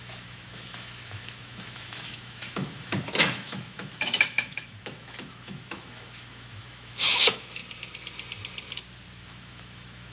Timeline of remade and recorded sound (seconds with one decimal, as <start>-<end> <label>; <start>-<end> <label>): 0.0-7.6 remade; 7.6-9.2 recorded; 9.2-10.1 remade